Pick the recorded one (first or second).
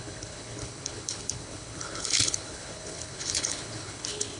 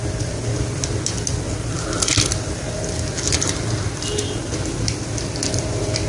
second